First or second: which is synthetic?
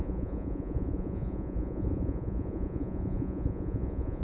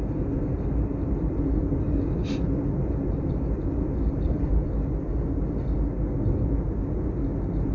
first